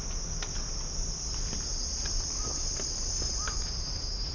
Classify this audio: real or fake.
real